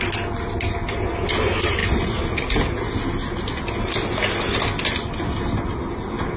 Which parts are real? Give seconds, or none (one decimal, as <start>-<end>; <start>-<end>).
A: 0.0-6.4